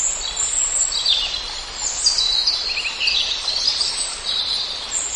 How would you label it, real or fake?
real